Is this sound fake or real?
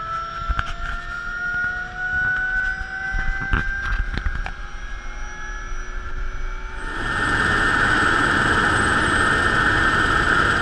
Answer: real